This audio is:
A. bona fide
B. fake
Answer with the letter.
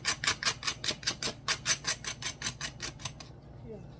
A